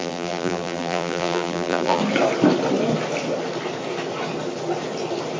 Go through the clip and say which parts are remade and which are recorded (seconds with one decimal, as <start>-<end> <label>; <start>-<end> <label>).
0.0-2.0 remade; 2.0-5.4 recorded